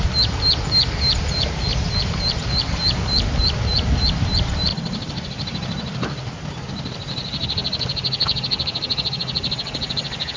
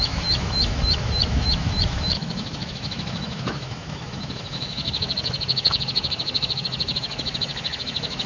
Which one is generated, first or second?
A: second